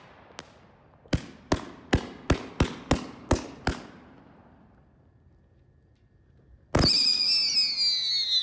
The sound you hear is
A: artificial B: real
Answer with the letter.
B